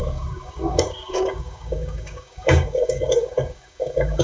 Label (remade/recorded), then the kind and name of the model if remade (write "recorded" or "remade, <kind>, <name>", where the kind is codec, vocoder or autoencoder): remade, codec, DAC